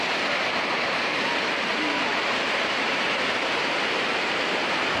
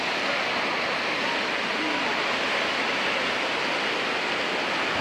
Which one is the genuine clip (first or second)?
second